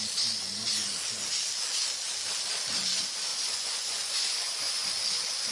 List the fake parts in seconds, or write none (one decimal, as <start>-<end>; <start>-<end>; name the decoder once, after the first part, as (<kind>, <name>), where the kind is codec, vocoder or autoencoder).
3.3-4.9 (vocoder, Vocos)